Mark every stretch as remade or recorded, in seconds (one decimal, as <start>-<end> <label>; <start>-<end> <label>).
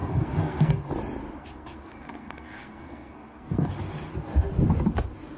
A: 0.0-0.7 remade; 0.7-1.4 recorded; 1.4-3.7 remade; 3.7-5.4 recorded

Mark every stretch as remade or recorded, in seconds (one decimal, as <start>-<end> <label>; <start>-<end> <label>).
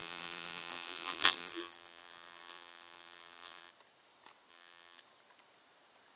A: 0.0-3.7 remade; 3.7-4.5 recorded; 4.5-5.0 remade; 5.0-6.2 recorded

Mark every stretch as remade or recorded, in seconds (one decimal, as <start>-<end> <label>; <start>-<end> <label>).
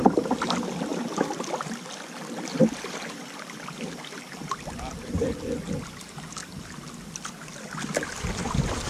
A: 0.0-0.9 recorded; 0.9-5.3 remade; 5.3-6.4 recorded; 6.4-8.9 remade